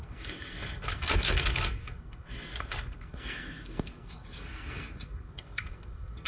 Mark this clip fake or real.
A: fake